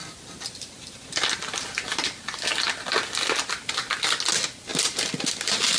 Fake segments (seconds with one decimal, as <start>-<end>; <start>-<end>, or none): none